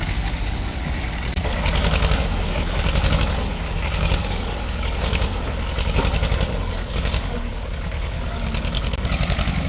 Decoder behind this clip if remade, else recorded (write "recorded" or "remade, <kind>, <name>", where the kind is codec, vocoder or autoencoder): remade, codec, DAC